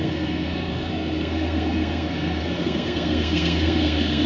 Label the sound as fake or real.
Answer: fake